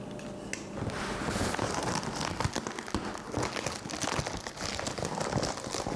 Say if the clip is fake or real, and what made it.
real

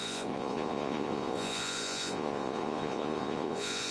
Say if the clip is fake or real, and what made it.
fake, vocoder, Vocos